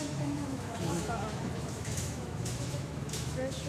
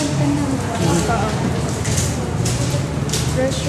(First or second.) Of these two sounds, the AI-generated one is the first